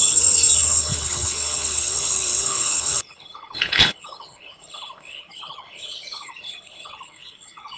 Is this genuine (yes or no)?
no